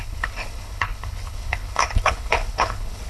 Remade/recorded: remade